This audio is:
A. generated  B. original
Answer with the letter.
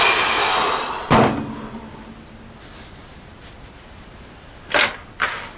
B